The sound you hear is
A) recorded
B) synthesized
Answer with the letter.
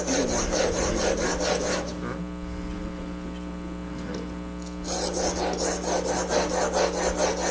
A